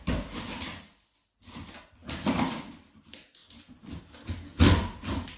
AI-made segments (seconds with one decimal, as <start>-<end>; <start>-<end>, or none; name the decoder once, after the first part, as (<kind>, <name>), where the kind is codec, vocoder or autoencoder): none